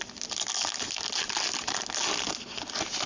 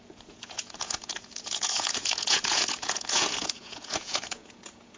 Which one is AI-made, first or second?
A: second